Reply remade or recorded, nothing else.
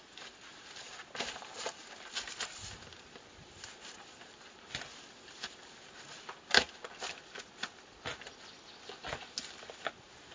recorded